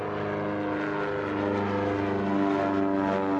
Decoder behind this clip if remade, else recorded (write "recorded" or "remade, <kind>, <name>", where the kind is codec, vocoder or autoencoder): recorded